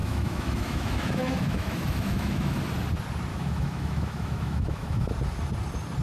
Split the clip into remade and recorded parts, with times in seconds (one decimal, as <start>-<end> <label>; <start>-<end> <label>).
0.0-2.6 remade; 2.6-3.3 recorded; 3.3-5.1 remade; 5.1-6.0 recorded